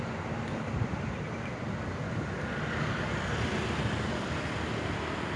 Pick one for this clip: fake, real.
real